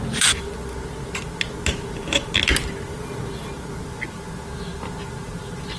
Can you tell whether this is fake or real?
real